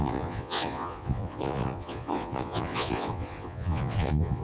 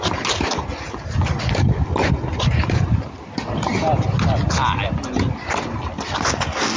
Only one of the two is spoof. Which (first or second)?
first